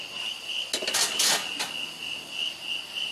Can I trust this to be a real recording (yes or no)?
yes